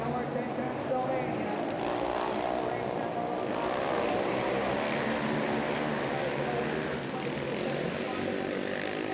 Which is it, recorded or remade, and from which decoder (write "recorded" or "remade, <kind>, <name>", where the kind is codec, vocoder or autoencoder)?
recorded